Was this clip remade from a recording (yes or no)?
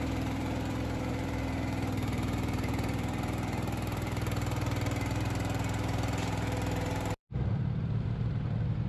yes